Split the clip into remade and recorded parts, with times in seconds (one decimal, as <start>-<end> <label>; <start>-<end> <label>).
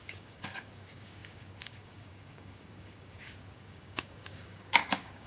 0.0-5.3 remade